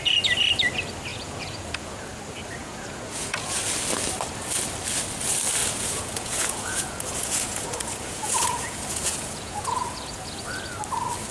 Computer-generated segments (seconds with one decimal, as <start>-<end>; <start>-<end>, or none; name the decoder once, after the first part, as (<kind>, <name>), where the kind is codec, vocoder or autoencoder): 1.1-2.1 (vocoder, Vocos); 2.6-3.6; 5.6-10.4

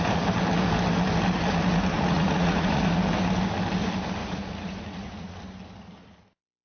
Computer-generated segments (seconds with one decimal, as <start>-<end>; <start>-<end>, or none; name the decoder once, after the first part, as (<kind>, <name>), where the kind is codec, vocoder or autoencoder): 1.9-2.8 (vocoder, Vocos); 4.2-5.3

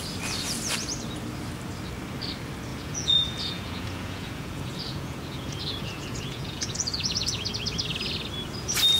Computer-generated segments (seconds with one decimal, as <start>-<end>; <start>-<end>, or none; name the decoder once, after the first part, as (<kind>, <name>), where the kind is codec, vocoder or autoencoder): 2.7-7.5 (vocoder, Vocos)

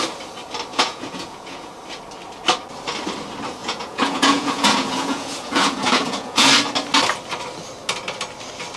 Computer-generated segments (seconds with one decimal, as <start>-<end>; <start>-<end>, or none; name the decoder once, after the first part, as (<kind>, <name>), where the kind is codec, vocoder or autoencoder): 0.7-1.7 (vocoder, Vocos); 3.6-6.5